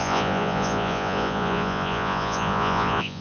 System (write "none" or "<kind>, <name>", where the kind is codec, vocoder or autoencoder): vocoder, Vocos